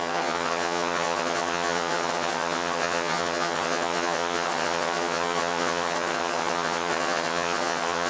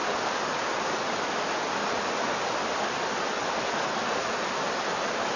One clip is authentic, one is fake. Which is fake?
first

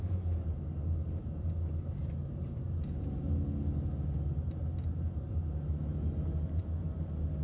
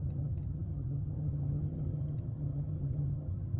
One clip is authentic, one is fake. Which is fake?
second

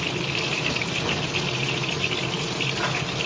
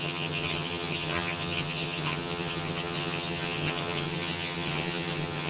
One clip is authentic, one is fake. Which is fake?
second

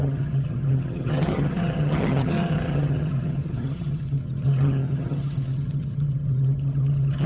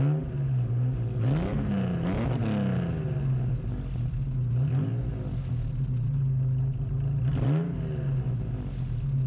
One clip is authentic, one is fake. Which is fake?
first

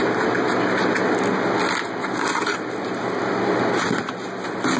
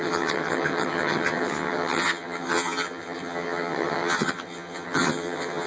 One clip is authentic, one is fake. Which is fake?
second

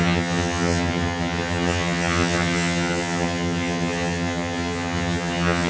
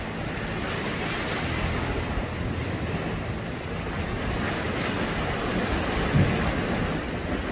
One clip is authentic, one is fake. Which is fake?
first